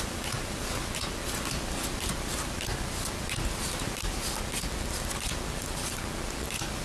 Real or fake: real